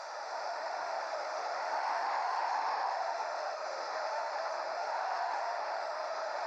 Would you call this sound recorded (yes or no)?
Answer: no